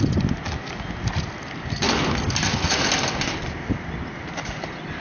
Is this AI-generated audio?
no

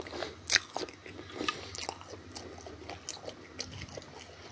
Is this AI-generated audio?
no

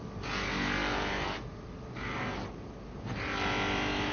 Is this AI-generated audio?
no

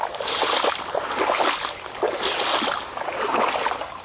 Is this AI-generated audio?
no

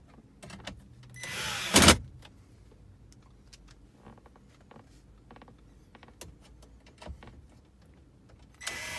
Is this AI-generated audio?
no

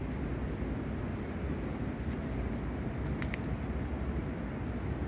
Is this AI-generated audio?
no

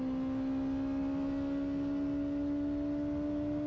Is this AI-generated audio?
no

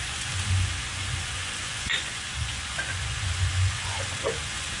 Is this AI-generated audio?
yes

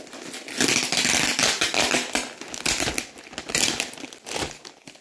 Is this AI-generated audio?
no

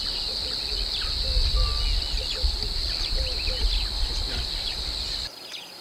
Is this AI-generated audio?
no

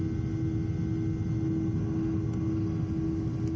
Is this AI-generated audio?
no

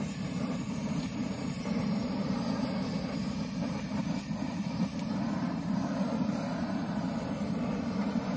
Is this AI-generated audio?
yes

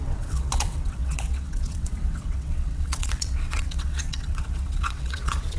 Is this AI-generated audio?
yes